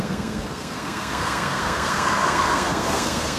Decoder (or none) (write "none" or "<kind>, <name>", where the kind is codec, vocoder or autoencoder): codec, SNAC